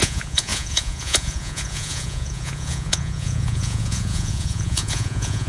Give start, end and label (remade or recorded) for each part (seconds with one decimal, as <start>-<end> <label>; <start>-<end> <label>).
0.0-5.5 remade